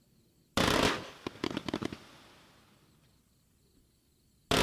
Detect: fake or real real